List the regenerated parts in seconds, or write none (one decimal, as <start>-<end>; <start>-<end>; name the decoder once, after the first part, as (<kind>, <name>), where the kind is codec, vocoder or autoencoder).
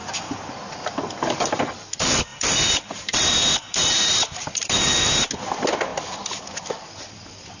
0.0-0.5 (vocoder, BigVGAN v2); 2.3-5.3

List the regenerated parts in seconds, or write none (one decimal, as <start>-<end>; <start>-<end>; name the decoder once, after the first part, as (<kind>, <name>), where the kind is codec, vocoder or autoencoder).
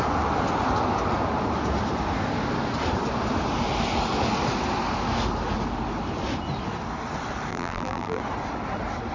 7.5-8.2 (vocoder, BigVGAN v2)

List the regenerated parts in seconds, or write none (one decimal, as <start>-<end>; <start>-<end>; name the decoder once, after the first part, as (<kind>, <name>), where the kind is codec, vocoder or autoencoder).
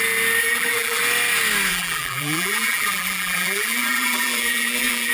0.4-1.0 (vocoder, BigVGAN v2); 1.7-5.1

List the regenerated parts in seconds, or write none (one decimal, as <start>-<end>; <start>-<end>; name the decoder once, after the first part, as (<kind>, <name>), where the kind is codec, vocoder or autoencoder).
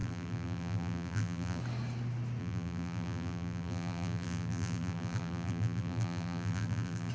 0.0-1.6 (vocoder, BigVGAN v2); 2.4-7.1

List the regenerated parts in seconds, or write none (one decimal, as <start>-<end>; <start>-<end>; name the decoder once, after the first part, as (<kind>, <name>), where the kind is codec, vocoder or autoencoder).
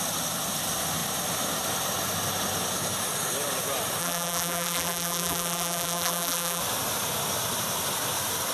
4.0-6.6 (vocoder, BigVGAN v2)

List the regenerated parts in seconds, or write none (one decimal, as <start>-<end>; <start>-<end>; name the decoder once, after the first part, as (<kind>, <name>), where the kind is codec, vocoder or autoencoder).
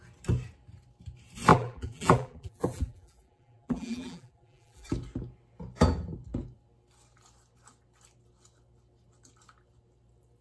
1.5-4.9 (vocoder, BigVGAN v2)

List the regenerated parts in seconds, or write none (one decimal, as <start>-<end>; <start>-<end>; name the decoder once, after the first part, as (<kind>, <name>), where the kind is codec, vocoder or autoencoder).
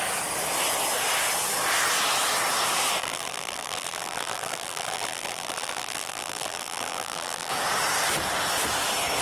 3.0-7.5 (vocoder, BigVGAN v2)